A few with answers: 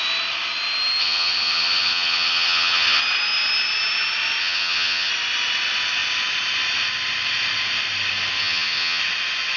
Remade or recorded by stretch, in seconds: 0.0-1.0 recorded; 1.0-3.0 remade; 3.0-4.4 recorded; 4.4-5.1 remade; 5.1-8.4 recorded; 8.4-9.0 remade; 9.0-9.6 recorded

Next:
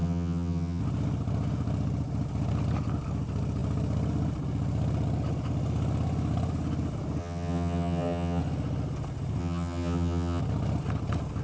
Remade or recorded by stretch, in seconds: 0.0-0.8 remade; 0.8-7.2 recorded; 7.2-8.4 remade; 8.4-9.4 recorded; 9.4-10.4 remade; 10.4-11.4 recorded